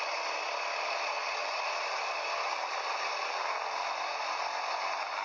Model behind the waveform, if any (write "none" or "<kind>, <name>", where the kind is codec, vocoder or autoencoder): none